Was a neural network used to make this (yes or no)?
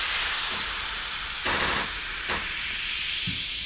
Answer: yes